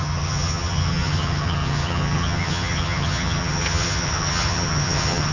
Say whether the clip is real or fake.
fake